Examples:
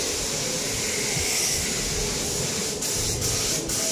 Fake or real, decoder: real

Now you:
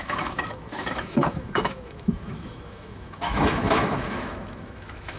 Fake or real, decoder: fake, autoencoder, DAC-VAE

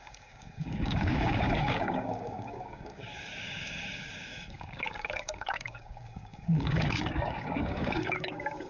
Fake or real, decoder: fake, codec, DAC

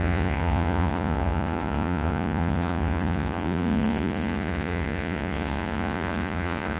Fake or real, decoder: fake, vocoder, Vocos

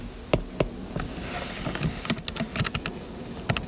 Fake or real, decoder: real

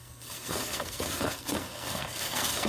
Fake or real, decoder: fake, codec, SNAC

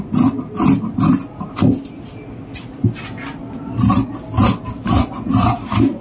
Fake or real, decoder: real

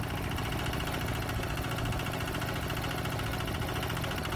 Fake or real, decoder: real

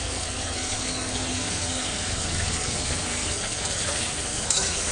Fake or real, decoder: fake, codec, SNAC